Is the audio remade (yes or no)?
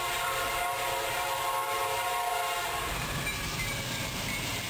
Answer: yes